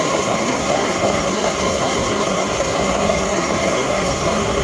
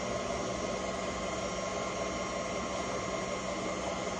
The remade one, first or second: first